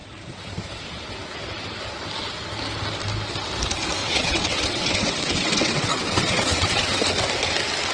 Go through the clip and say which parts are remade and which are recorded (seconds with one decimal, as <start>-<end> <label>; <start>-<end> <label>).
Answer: 0.0-4.0 recorded; 4.0-7.0 remade; 7.0-7.9 recorded